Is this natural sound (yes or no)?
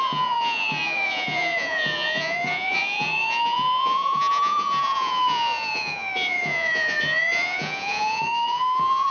no